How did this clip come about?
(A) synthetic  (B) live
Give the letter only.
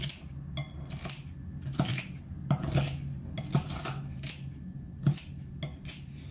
B